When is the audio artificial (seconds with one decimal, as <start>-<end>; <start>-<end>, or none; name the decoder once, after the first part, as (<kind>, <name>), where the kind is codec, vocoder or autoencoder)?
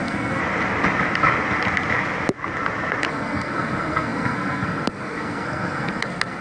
0.0-0.4 (codec, SNAC); 3.1-6.4